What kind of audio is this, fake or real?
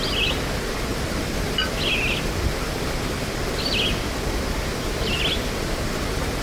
real